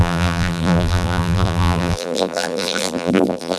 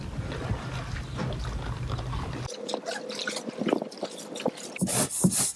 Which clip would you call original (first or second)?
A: second